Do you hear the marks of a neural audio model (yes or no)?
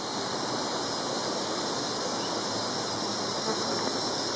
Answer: no